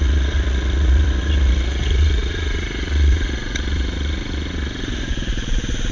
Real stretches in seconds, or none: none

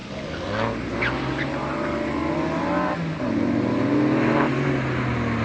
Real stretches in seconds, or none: 0.0-5.4

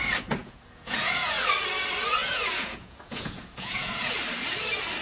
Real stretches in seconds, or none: 0.0-0.4; 1.5-2.2; 4.1-5.0

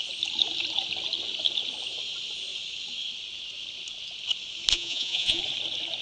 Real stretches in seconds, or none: 0.0-4.7; 5.4-6.0

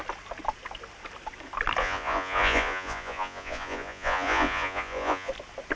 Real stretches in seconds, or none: 0.0-1.8; 5.3-5.8

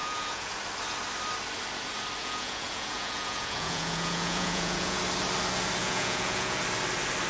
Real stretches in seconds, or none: 0.5-2.2; 5.0-5.8; 6.6-7.3

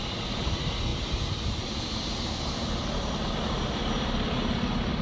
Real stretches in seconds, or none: 0.0-5.0

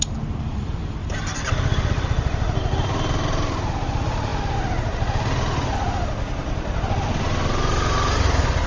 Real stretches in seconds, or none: 0.0-8.7